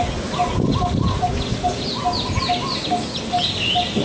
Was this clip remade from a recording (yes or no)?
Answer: no